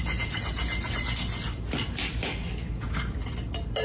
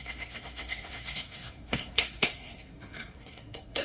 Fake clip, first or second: second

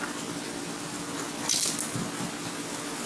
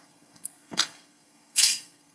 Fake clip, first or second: second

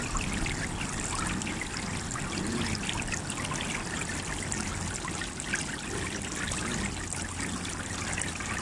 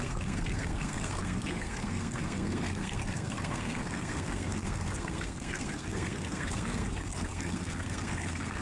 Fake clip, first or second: second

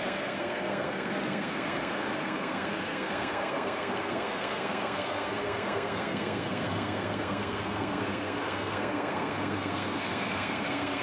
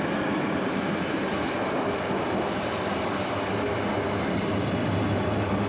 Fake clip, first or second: first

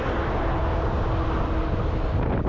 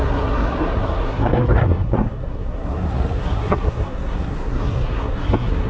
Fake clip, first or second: second